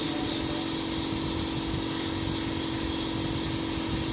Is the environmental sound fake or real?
real